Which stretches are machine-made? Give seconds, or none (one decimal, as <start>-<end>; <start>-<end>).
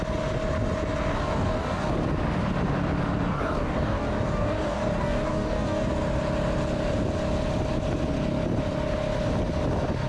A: 1.1-1.9; 3.3-5.9